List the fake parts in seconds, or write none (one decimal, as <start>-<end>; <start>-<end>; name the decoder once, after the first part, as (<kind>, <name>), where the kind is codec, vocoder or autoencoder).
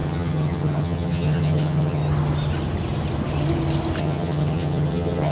0.0-2.0 (vocoder, HiFi-GAN); 4.0-5.3